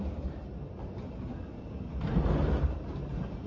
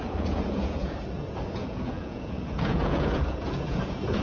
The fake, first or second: second